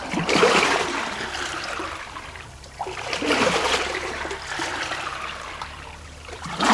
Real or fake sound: fake